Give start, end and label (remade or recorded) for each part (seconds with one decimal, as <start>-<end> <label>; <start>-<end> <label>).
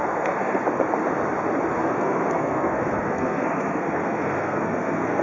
0.0-0.6 remade; 0.6-1.8 recorded; 1.8-5.2 remade